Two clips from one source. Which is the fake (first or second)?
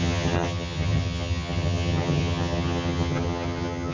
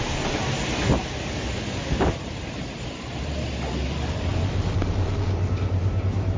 first